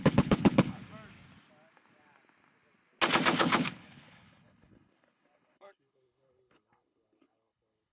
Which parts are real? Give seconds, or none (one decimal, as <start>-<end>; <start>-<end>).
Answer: 0.8-3.4